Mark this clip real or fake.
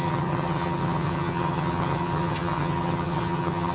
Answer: fake